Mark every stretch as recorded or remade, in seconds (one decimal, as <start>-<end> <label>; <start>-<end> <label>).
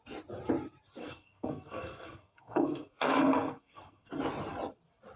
0.0-1.0 recorded; 1.0-4.1 remade; 4.1-5.2 recorded